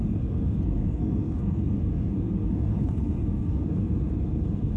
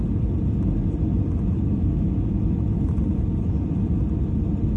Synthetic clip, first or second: first